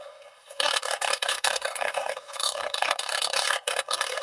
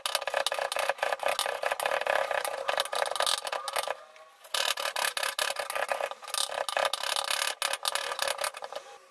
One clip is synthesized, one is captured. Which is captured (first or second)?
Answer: second